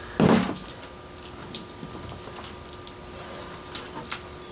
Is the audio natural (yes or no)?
yes